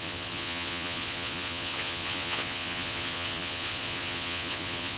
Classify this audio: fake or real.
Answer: fake